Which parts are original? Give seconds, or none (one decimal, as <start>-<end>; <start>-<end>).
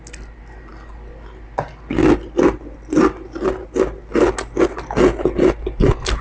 0.0-6.2